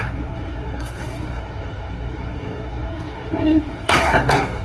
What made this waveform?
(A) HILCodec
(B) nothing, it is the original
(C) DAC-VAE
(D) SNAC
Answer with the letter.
D